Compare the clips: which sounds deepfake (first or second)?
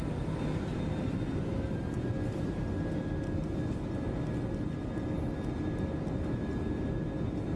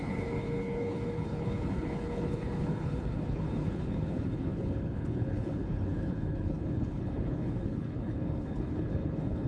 second